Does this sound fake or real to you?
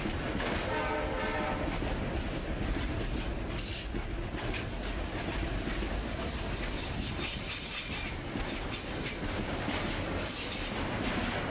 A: real